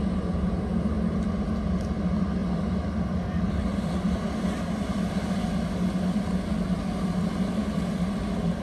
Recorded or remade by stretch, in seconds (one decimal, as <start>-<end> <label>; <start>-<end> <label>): 0.0-2.4 recorded; 2.4-5.4 remade; 5.4-7.6 recorded; 7.6-8.6 remade

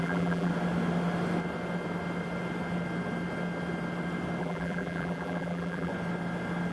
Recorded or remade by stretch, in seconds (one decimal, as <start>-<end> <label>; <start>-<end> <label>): 0.0-0.5 remade; 0.5-4.4 recorded; 4.4-5.9 remade; 5.9-6.7 recorded

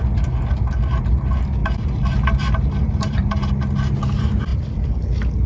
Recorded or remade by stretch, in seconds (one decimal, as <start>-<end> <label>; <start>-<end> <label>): 0.0-1.6 recorded; 1.6-3.5 remade; 3.5-5.5 recorded

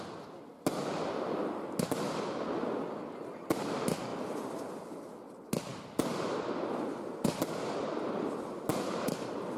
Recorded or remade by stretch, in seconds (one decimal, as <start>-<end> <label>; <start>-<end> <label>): 0.0-9.6 recorded

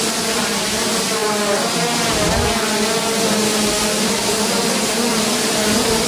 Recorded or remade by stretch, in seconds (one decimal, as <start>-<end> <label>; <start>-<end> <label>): 0.0-6.1 recorded

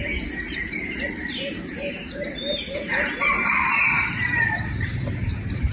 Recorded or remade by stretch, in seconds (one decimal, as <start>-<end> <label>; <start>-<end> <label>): 0.0-1.1 recorded; 1.1-5.7 remade